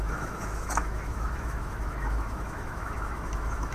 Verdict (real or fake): fake